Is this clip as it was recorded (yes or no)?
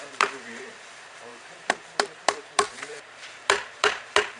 no